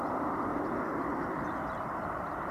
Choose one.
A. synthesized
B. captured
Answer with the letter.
A